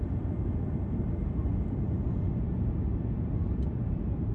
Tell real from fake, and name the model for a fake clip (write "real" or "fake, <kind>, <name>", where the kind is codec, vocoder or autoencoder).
fake, vocoder, BigVGAN v2